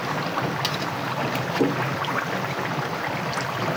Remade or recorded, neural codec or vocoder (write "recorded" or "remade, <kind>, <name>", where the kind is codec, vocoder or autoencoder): recorded